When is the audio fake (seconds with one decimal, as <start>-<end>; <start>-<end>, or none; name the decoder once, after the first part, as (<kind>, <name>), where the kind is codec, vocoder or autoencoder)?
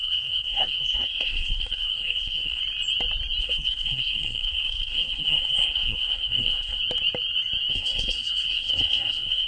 0.0-2.6 (codec, SNAC); 3.4-6.8; 7.7-9.5